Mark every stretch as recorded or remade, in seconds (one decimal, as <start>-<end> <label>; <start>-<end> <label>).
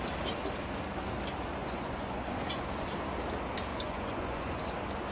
0.0-1.6 recorded; 1.6-2.6 remade; 2.6-3.7 recorded; 3.7-4.6 remade; 4.6-5.1 recorded